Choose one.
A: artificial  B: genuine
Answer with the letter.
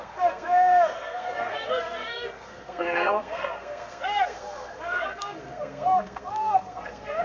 A